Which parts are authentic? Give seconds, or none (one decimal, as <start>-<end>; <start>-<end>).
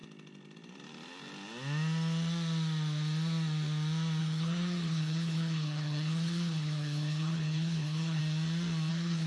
0.0-4.2; 8.2-8.9